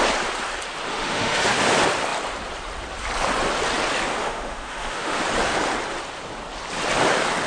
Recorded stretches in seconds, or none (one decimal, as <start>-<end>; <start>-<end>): 0.0-0.9; 1.6-4.2; 5.2-7.5